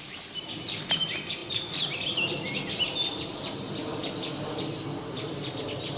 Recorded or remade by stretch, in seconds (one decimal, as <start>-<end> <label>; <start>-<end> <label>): 0.0-6.0 recorded